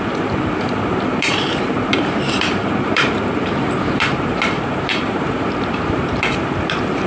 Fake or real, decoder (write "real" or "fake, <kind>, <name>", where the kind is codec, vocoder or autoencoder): fake, vocoder, BigVGAN v2